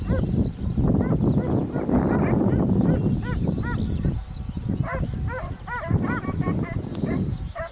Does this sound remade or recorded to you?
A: recorded